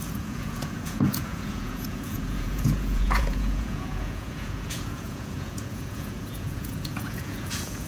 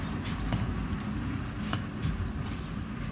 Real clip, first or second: second